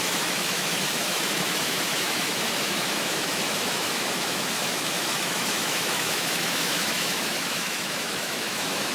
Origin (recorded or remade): remade